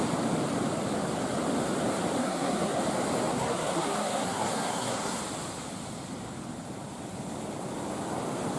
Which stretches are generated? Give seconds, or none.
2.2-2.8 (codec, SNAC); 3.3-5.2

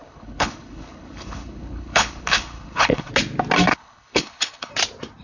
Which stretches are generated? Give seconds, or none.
0.0-3.1 (codec, HILCodec); 3.7-4.7

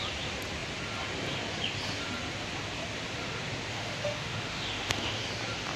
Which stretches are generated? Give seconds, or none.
3.7-5.2 (autoencoder, DAC-VAE)

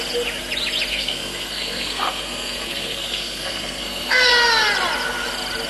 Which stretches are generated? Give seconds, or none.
0.9-4.3 (codec, SNAC)

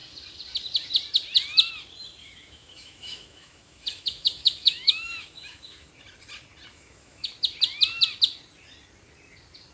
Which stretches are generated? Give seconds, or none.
2.2-5.9 (autoencoder, DAC-VAE); 6.7-7.3